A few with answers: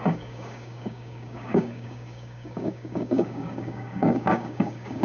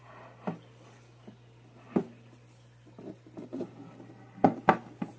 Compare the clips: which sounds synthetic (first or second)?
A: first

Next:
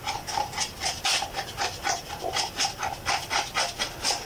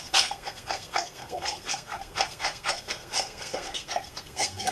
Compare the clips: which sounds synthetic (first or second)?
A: second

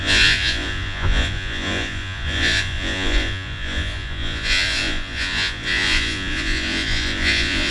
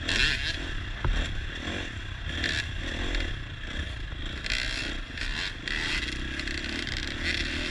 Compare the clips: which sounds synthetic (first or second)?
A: first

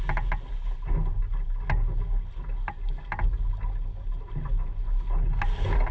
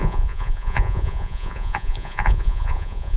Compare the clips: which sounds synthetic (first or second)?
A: second